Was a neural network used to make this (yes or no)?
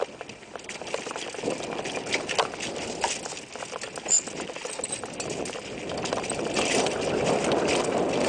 no